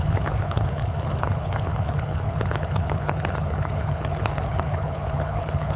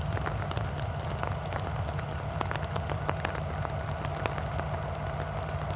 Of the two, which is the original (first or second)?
second